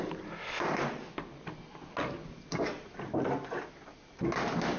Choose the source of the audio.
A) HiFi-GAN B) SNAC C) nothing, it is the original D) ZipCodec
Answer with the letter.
C